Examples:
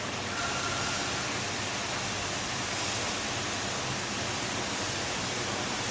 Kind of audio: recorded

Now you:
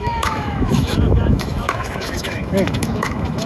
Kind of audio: remade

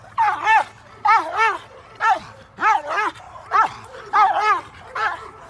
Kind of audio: recorded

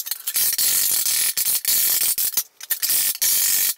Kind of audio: recorded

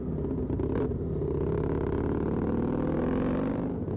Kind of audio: recorded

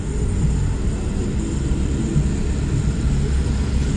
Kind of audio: recorded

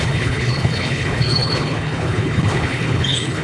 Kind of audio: remade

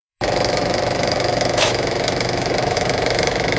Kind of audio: remade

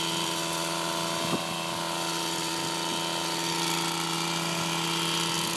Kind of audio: recorded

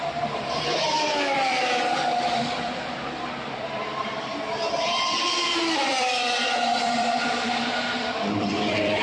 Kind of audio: remade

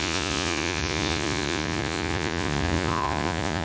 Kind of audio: remade